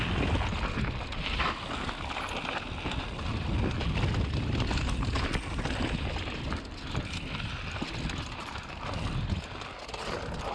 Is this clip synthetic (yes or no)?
no